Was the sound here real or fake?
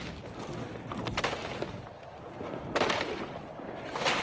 real